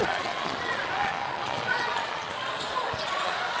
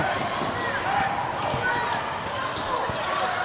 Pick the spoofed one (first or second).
first